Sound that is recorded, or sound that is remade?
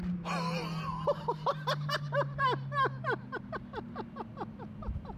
recorded